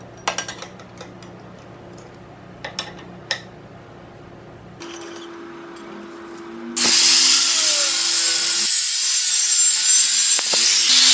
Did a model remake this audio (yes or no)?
no